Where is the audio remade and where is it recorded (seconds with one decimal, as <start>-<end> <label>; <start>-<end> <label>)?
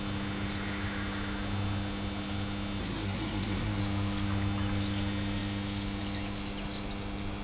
0.0-2.8 recorded; 2.8-3.8 remade; 3.8-7.4 recorded